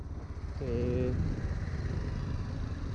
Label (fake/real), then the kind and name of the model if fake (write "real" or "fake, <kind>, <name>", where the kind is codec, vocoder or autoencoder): real